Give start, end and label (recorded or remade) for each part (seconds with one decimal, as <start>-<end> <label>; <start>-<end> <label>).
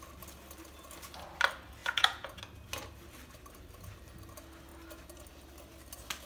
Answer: 0.0-1.8 recorded; 1.8-2.4 remade; 2.4-6.3 recorded